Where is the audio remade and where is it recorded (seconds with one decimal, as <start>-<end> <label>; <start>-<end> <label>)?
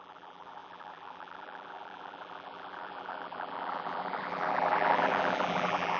0.0-6.0 remade